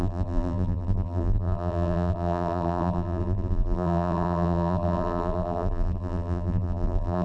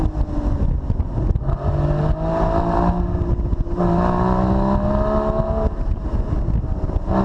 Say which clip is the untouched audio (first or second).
second